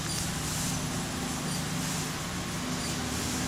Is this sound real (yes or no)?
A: yes